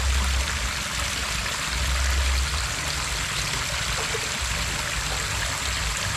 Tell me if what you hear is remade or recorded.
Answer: recorded